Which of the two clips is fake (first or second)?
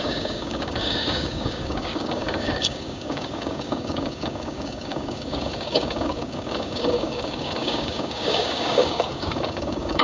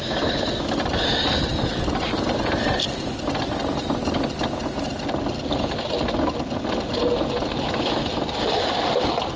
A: first